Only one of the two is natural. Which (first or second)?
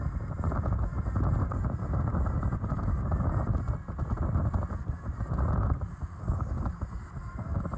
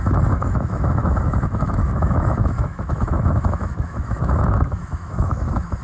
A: first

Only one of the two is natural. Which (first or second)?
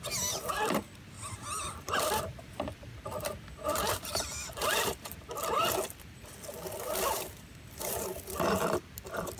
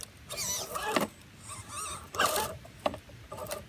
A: second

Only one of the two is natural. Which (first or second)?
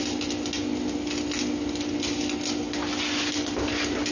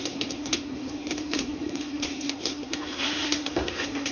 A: first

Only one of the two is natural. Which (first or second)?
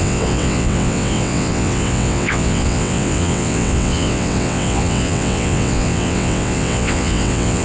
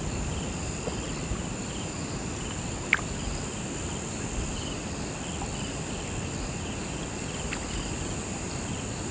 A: second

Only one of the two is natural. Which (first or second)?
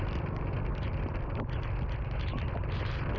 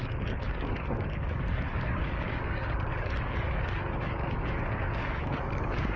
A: first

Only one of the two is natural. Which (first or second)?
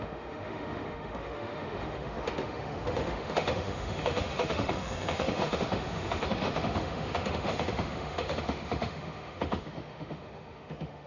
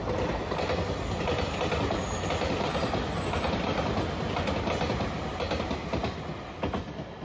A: second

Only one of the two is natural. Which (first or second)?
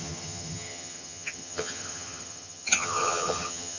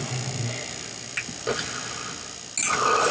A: second